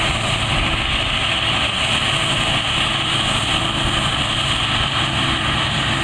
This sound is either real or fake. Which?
real